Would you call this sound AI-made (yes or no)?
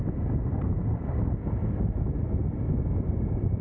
no